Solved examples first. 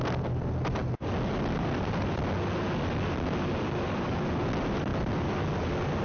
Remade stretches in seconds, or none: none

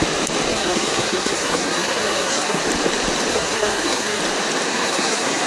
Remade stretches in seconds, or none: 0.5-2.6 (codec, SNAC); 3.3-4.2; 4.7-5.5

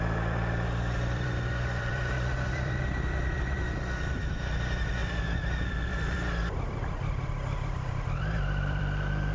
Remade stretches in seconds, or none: 0.0-9.3 (vocoder, BigVGAN v2)